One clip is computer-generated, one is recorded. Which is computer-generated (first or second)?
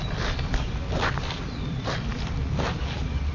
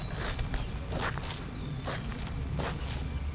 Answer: first